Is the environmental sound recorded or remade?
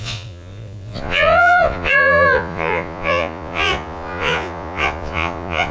remade